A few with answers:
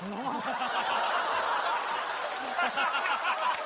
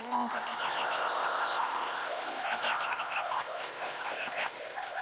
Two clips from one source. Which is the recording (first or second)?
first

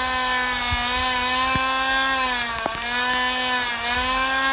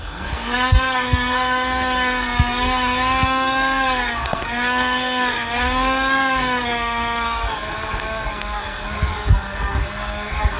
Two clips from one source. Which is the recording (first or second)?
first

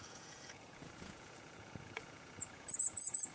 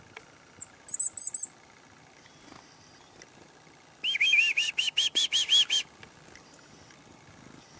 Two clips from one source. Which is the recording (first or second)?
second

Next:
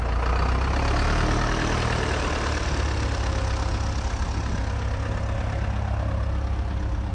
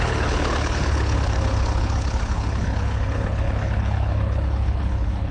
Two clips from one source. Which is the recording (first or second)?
first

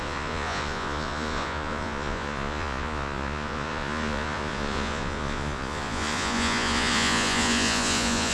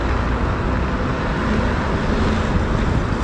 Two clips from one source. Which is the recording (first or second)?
second